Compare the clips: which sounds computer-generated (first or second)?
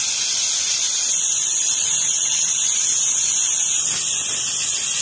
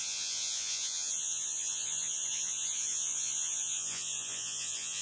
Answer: second